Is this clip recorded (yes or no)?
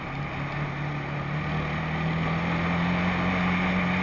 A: yes